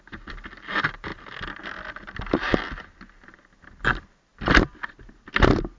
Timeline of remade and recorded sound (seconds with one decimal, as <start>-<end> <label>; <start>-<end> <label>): 0.0-5.8 recorded